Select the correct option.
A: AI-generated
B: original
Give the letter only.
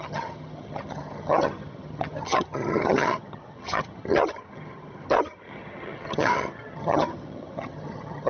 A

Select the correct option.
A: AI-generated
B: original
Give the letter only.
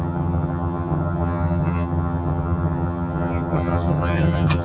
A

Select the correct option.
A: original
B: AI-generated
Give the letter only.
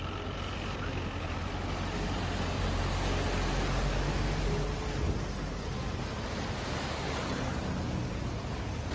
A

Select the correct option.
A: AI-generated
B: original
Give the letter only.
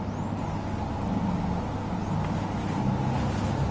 B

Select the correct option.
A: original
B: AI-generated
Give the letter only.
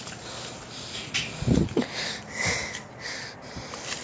A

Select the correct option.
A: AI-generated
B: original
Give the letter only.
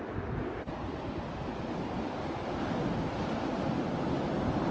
B